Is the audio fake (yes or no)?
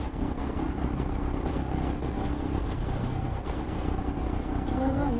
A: yes